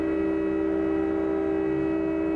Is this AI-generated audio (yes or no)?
no